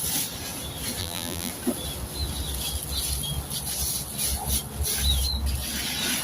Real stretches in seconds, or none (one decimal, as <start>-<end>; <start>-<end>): 0.0-1.0; 1.5-6.2